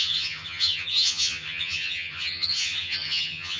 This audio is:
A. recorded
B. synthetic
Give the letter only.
B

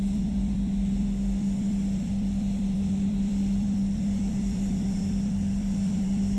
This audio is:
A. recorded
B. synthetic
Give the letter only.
B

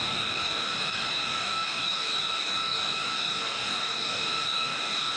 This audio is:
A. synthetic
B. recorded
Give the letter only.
A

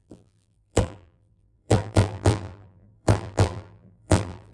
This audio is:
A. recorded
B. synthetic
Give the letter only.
B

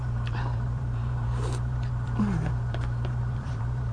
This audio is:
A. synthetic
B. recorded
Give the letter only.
A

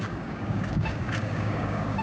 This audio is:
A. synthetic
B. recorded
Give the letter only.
A